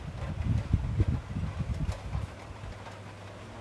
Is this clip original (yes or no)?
yes